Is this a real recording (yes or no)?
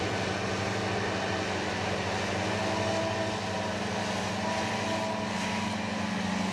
yes